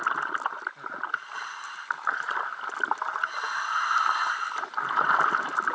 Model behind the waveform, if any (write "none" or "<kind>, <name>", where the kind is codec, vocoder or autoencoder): none